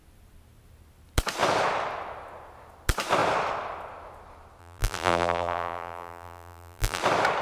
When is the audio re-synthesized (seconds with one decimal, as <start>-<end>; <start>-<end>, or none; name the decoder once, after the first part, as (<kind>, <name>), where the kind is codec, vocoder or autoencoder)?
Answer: 4.6-7.0 (vocoder, BigVGAN v2)